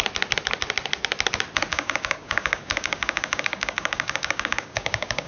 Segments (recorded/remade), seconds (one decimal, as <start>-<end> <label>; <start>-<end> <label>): 0.0-1.7 recorded; 1.7-5.3 remade